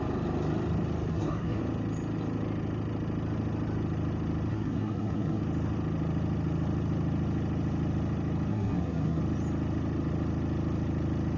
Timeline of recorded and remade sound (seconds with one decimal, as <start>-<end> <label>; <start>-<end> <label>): 0.0-1.1 recorded; 1.1-1.6 remade; 1.6-4.5 recorded; 4.5-5.4 remade; 5.4-8.5 recorded; 8.5-9.2 remade; 9.2-11.4 recorded